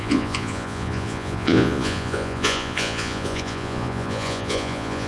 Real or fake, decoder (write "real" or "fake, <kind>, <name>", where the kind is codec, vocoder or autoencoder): fake, vocoder, Vocos